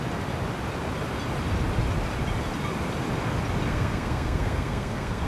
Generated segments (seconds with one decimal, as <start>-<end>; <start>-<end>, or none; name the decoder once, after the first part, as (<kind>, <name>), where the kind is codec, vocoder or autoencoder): 3.7-5.3 (codec, SNAC)